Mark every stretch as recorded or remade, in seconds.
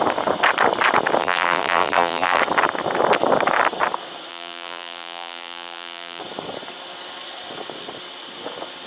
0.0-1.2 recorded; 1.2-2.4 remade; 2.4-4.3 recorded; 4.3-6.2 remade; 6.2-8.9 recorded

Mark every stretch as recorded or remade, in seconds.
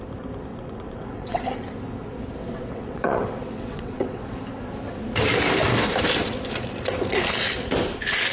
0.0-0.5 recorded; 0.5-1.4 remade; 1.4-2.4 recorded; 2.4-4.2 remade; 4.2-8.3 recorded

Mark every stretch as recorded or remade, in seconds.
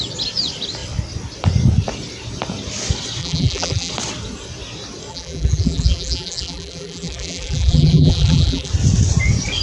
0.0-3.2 recorded; 3.2-3.9 remade; 3.9-5.1 recorded; 5.1-8.7 remade; 8.7-9.6 recorded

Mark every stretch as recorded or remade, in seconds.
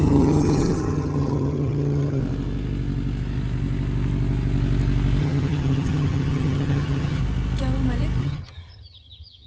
0.0-2.2 remade; 2.2-5.2 recorded; 5.2-7.2 remade; 7.2-8.2 recorded; 8.2-9.5 remade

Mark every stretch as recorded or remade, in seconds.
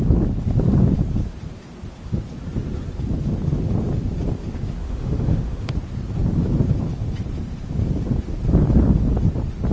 0.0-4.8 recorded; 4.8-5.7 remade; 5.7-9.7 recorded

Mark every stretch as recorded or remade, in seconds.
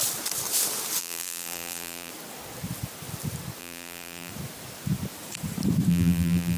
0.0-1.0 recorded; 1.0-2.1 remade; 2.1-3.6 recorded; 3.6-4.3 remade; 4.3-5.9 recorded; 5.9-6.6 remade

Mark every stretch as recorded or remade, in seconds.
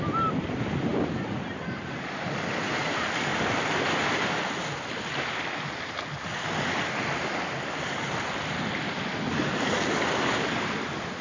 0.0-11.2 recorded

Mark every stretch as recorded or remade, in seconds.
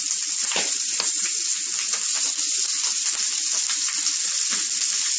0.0-0.4 recorded; 0.4-1.4 remade; 1.4-5.2 recorded